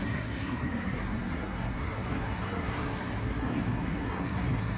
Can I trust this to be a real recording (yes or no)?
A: no